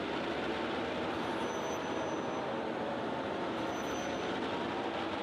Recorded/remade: recorded